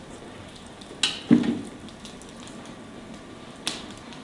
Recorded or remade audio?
recorded